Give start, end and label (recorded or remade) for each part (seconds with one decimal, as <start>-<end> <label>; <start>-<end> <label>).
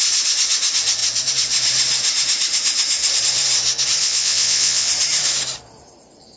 0.0-4.0 recorded; 4.0-4.9 remade; 4.9-6.4 recorded